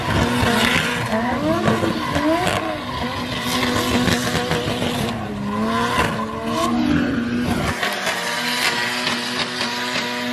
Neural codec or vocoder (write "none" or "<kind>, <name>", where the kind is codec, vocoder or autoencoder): none